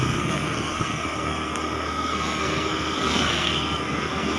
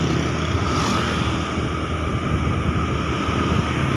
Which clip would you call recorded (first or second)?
second